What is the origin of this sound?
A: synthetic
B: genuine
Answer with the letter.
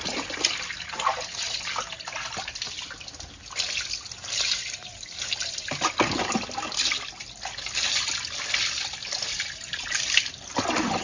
B